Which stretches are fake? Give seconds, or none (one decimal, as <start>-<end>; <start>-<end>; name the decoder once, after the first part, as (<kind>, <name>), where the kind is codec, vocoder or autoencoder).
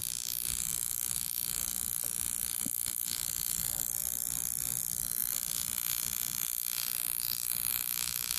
0.0-4.0 (vocoder, BigVGAN v2); 4.8-8.4